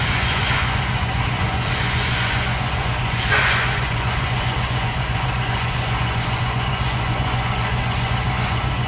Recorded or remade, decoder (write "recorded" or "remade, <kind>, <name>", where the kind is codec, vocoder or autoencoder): remade, vocoder, Vocos